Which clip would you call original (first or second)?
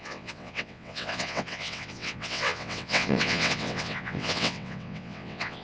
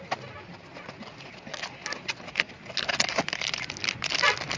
second